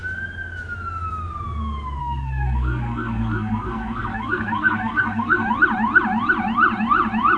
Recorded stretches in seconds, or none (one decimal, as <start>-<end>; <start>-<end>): 0.0-2.0; 5.5-7.4